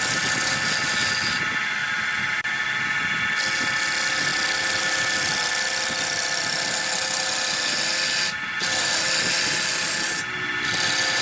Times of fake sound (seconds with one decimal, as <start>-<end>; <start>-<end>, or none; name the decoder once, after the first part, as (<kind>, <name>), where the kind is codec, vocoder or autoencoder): none